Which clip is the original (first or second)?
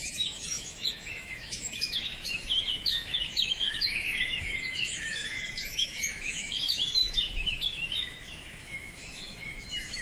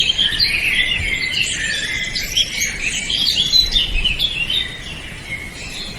second